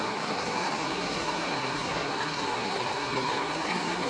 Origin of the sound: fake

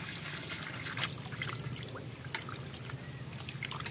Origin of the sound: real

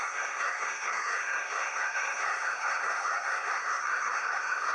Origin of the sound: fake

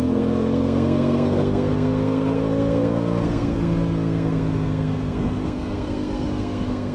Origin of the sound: fake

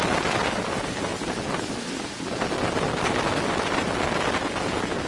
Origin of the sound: real